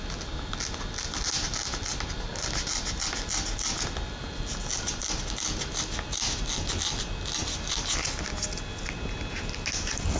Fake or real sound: real